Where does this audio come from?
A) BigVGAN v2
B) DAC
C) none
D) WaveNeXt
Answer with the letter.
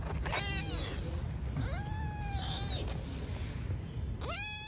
C